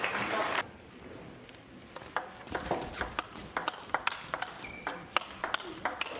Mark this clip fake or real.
real